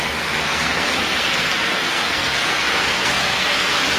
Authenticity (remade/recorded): remade